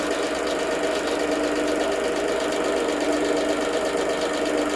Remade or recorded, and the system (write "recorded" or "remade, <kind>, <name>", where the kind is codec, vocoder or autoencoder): recorded